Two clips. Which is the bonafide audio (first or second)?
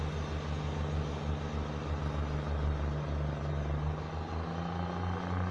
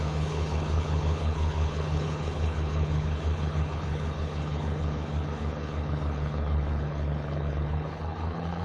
first